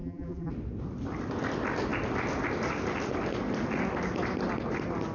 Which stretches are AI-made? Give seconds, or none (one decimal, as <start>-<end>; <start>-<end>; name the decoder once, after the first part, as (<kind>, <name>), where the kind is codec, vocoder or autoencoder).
0.0-0.5 (vocoder, BigVGAN v2)